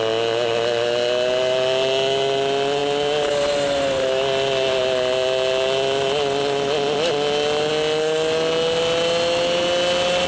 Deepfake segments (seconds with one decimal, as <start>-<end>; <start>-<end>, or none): none